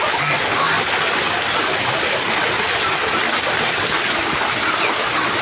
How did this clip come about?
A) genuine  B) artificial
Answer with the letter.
A